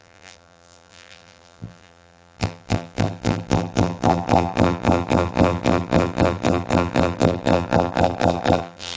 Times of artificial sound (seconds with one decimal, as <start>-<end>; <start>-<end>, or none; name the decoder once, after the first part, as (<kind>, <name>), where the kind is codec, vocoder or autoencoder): 0.0-9.0 (vocoder, BigVGAN v2)